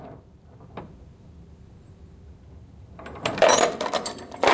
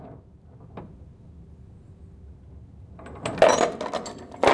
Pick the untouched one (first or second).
second